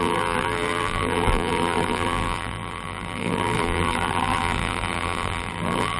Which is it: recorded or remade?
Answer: remade